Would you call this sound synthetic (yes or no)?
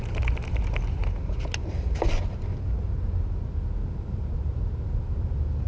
no